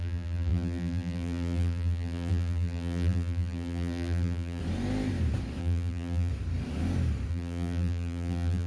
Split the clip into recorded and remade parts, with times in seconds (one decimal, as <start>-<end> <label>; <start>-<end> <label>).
0.0-4.6 remade; 4.6-5.6 recorded; 5.6-6.3 remade; 6.3-7.3 recorded; 7.3-8.7 remade